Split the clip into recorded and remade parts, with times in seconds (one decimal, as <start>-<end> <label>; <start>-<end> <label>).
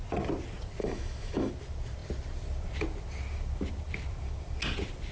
0.0-0.8 recorded; 0.8-1.5 remade; 1.5-5.1 recorded